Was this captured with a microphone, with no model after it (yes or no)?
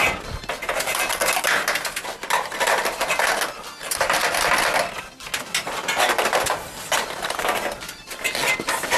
yes